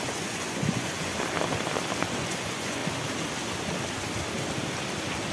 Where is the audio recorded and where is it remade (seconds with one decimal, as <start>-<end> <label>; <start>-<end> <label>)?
0.0-1.1 remade; 1.1-2.0 recorded; 2.0-2.8 remade; 2.8-5.3 recorded